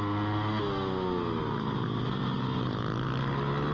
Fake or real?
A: real